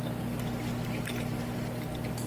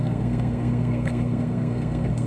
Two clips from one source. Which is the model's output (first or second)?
second